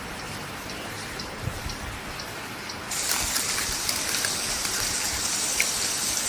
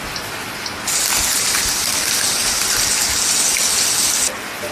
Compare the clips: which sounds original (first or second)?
second